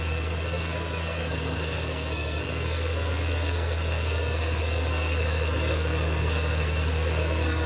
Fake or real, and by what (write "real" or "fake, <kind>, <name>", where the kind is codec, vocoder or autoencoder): fake, codec, SNAC